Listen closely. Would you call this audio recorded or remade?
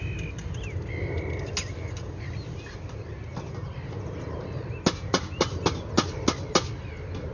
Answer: recorded